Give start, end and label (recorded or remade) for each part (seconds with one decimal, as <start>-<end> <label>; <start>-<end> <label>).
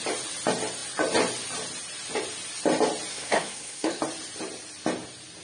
0.0-3.1 recorded; 3.1-4.0 remade; 4.0-5.4 recorded